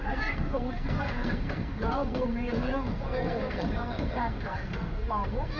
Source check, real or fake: fake